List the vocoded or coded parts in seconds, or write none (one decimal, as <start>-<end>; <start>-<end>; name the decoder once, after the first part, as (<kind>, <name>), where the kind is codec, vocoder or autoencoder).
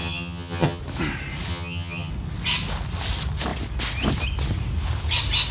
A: 0.0-0.8 (vocoder, HiFi-GAN); 1.5-2.1